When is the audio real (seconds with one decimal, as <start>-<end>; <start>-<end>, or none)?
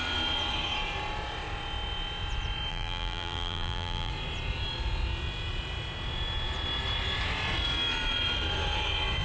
0.0-2.7; 4.1-9.2